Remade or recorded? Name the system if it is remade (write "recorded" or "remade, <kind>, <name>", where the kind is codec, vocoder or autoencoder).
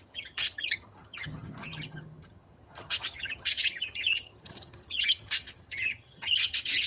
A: remade, vocoder, HiFi-GAN